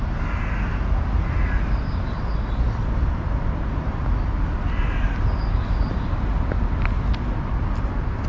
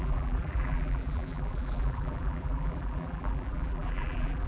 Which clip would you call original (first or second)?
first